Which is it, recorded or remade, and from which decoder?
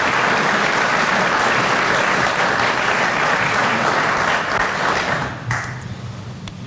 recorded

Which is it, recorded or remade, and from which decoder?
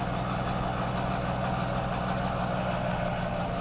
recorded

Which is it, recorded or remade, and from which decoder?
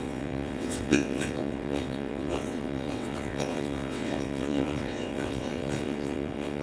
remade, vocoder, WaveNeXt